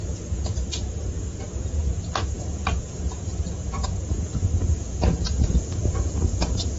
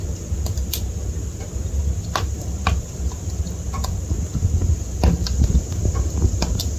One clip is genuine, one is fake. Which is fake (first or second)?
first